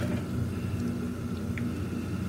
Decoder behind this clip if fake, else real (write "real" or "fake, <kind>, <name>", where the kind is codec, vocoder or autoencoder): real